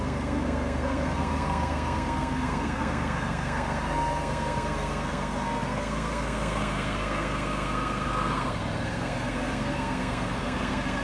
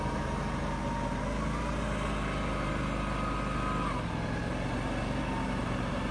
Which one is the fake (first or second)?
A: first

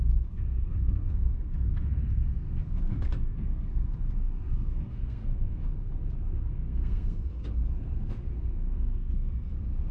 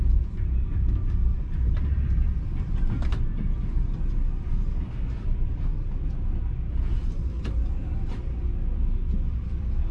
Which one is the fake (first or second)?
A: first